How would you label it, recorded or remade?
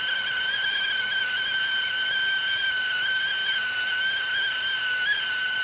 recorded